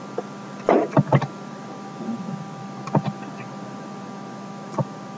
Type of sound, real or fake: real